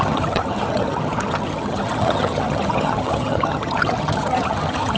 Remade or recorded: remade